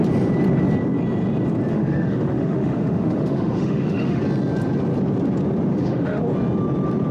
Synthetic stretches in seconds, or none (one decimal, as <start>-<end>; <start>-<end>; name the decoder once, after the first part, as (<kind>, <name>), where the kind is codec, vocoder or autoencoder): 1.7-4.2 (autoencoder, DAC-VAE); 5.7-6.2